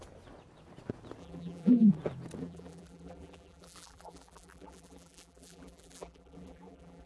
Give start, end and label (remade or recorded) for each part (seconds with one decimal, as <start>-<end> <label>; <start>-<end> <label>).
0.0-1.2 recorded; 1.2-1.9 remade; 1.9-2.4 recorded; 2.4-7.1 remade